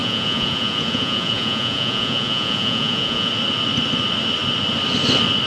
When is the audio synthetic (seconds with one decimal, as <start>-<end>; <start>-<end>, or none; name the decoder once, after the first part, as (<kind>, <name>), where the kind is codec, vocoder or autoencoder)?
0.0-3.3 (vocoder, Vocos)